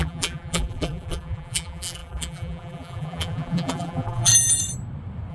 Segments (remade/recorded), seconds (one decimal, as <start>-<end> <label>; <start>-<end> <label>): 0.0-4.3 remade; 4.3-5.3 recorded